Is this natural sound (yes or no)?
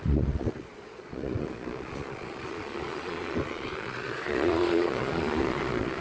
no